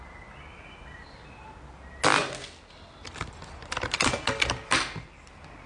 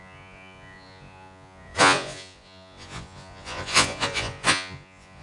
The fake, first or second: second